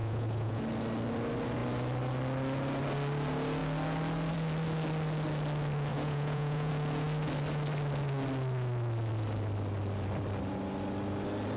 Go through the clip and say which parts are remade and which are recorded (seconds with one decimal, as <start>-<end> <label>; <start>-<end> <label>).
0.0-0.6 remade; 0.6-5.9 recorded; 5.9-6.7 remade; 6.7-11.6 recorded